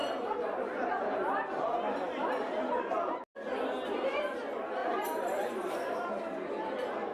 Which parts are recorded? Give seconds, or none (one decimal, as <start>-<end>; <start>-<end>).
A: 0.0-4.8; 6.1-7.1